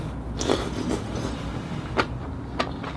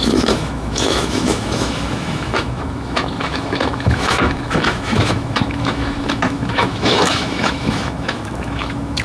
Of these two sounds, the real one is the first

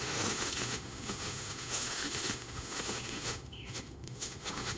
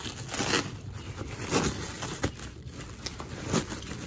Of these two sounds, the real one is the second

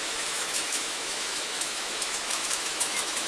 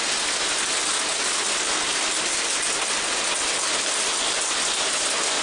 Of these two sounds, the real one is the second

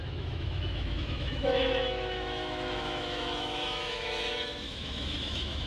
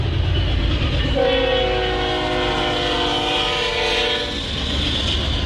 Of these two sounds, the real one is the second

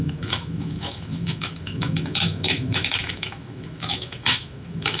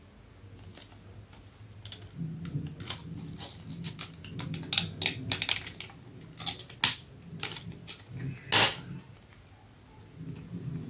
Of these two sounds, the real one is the second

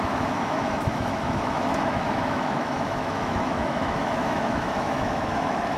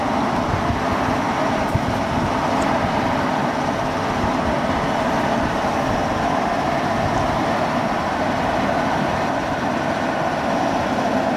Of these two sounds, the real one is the second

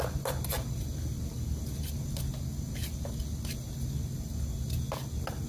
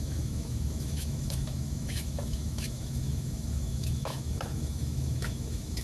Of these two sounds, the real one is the first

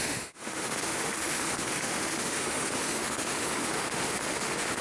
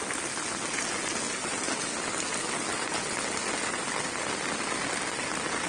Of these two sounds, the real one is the second